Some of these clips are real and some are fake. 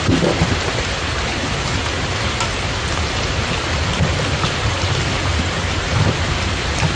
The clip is real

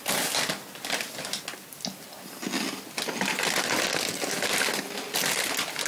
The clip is real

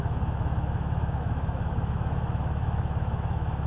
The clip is fake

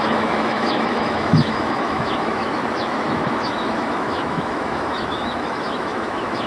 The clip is fake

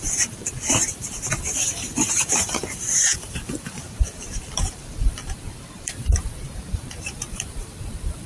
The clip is fake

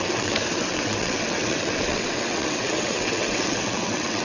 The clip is fake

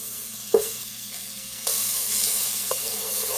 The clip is fake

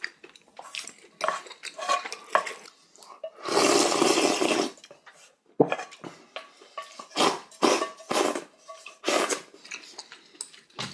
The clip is real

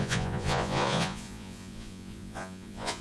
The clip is fake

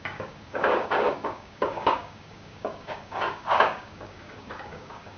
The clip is fake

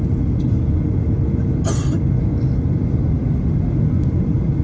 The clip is real